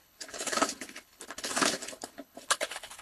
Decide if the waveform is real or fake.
fake